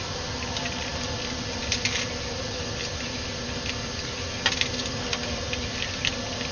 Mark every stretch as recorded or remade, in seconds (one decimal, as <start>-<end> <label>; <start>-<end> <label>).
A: 0.0-6.5 recorded

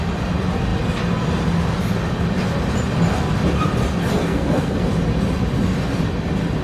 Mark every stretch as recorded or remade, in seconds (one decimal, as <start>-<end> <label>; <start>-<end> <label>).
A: 0.0-4.1 recorded; 4.1-4.9 remade; 4.9-6.6 recorded

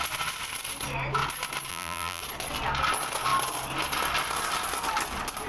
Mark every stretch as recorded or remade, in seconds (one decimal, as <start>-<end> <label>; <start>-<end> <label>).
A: 0.0-1.7 recorded; 1.7-2.2 remade; 2.2-5.5 recorded

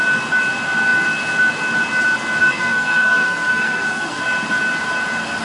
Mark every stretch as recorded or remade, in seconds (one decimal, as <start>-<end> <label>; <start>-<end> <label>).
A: 0.0-2.4 recorded; 2.4-4.2 remade; 4.2-5.4 recorded

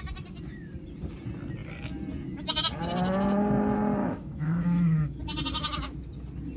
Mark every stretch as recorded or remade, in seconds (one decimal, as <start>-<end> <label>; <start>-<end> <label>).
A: 0.0-4.0 recorded; 4.0-5.2 remade; 5.2-6.6 recorded

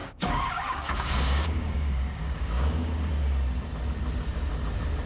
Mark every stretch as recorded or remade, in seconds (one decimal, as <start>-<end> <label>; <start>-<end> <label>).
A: 0.0-3.1 remade; 3.1-5.1 recorded

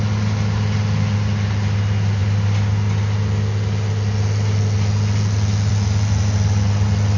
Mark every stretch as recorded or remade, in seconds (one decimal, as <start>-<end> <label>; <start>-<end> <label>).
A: 0.0-7.2 recorded

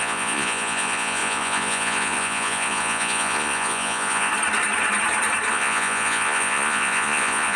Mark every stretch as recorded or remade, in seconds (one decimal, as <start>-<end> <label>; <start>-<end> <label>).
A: 0.0-4.3 remade; 4.3-5.5 recorded; 5.5-7.6 remade